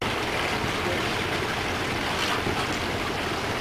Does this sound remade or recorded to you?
recorded